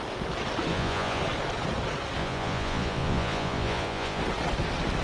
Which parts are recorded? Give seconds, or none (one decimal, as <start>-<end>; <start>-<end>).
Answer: 0.0-0.7; 1.2-2.2; 4.2-5.0